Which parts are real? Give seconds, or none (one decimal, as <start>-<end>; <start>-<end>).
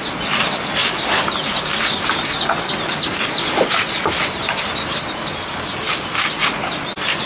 0.0-7.3